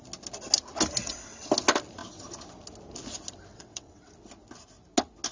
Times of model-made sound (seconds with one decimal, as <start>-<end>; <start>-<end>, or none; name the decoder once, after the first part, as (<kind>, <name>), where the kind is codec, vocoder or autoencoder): 1.0-1.5 (vocoder, WaveNeXt); 3.5-4.1